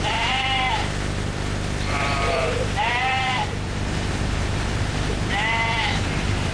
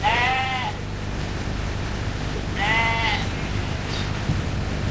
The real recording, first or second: second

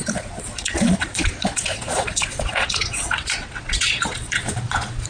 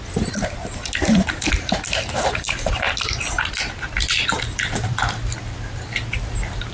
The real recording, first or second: second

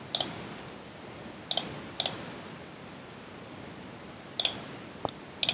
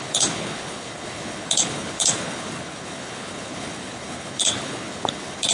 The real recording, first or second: first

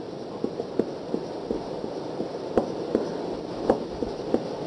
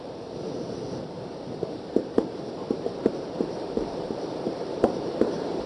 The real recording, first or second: first